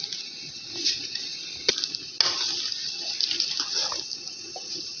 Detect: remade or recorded recorded